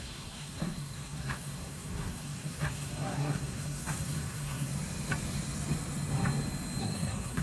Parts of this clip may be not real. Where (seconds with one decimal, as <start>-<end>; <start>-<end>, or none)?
0.0-4.7; 6.8-7.4